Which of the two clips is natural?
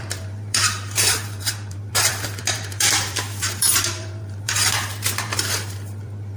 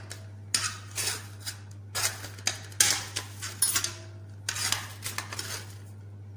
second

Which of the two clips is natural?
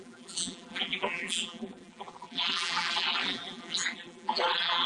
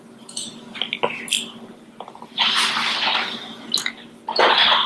second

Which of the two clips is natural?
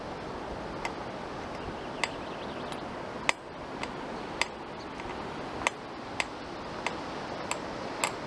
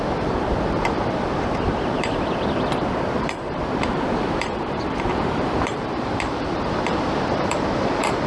first